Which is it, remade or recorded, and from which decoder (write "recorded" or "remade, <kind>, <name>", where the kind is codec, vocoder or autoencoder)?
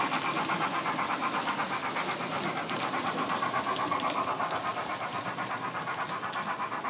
recorded